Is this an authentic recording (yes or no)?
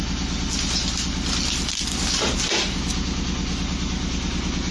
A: yes